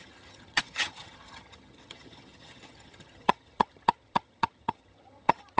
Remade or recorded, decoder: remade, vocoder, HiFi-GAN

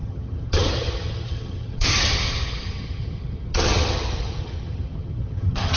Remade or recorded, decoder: remade, vocoder, HiFi-GAN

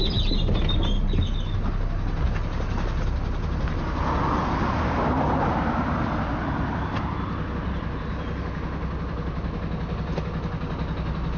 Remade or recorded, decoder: recorded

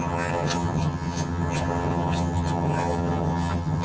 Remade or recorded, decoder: remade, vocoder, HiFi-GAN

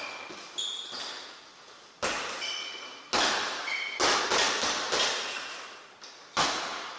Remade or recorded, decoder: recorded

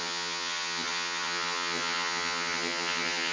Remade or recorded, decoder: remade, vocoder, HiFi-GAN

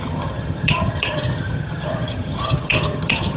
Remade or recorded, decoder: remade, vocoder, HiFi-GAN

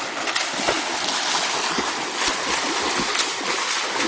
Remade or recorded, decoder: recorded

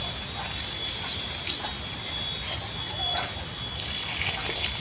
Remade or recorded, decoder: recorded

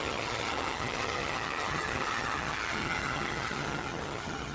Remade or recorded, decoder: remade, vocoder, HiFi-GAN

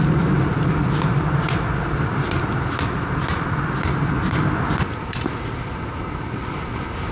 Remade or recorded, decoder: recorded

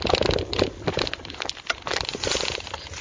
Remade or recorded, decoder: recorded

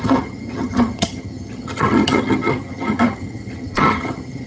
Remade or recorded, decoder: remade, vocoder, HiFi-GAN